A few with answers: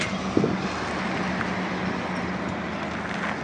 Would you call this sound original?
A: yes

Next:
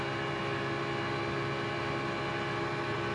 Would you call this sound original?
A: yes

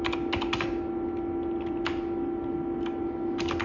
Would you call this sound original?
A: yes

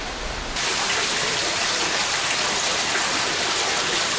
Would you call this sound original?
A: no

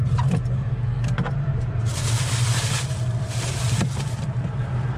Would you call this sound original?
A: no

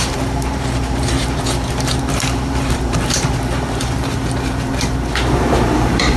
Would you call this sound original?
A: no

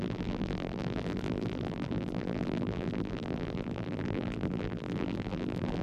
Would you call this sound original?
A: no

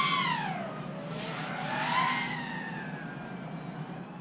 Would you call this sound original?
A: yes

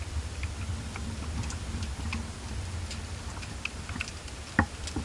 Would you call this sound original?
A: no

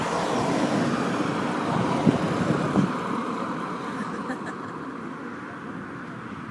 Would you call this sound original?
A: yes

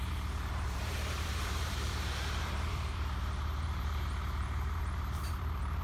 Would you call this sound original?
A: no